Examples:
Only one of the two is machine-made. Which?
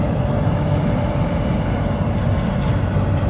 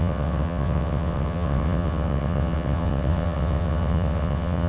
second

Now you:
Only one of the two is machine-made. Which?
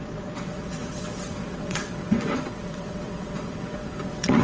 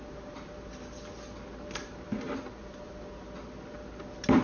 first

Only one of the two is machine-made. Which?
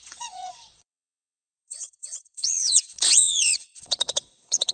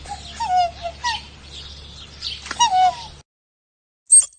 first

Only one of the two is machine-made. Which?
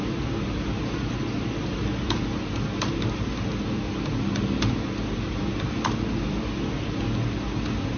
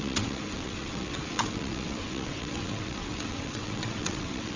second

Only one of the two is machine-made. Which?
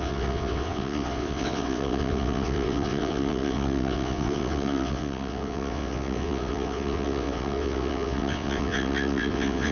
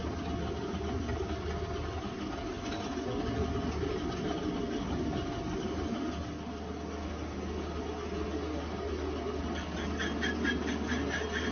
first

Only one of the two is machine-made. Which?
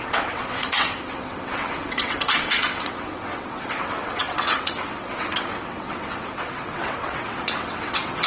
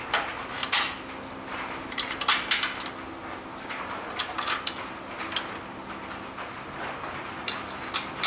first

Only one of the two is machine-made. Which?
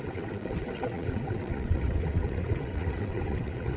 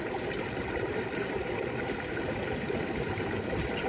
first